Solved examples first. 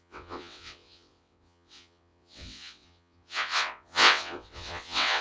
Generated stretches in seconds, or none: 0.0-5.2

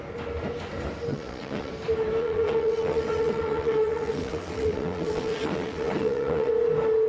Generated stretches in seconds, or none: 1.1-1.7; 2.2-6.5

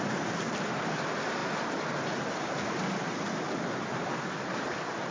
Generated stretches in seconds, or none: none

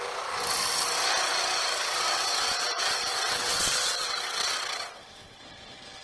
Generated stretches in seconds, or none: 1.8-5.4

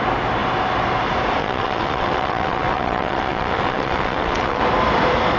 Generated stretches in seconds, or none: 1.4-4.6

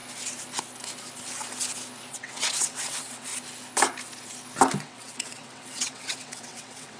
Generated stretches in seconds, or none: 2.1-3.3; 4.8-7.0

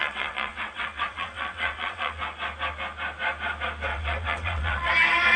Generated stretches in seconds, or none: 0.0-2.2; 3.9-4.9

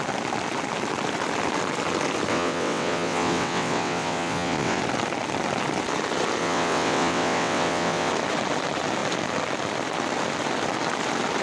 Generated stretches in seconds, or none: 2.3-4.8; 6.4-8.1